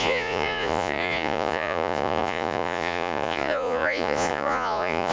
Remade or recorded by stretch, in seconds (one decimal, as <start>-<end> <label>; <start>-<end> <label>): 0.0-5.1 remade